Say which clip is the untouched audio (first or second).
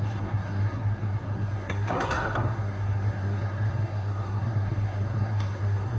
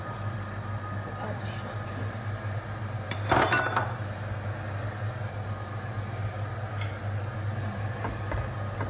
second